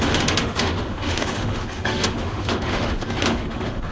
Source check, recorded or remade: remade